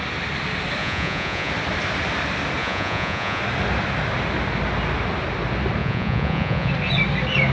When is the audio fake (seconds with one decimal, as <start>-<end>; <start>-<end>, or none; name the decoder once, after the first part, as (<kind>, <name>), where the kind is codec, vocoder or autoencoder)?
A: 0.8-1.5 (vocoder, Vocos); 2.6-3.4; 5.8-6.7